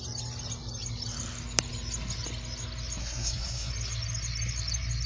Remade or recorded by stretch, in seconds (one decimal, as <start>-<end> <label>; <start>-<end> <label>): 0.0-3.0 recorded; 3.0-3.7 remade; 3.7-5.1 recorded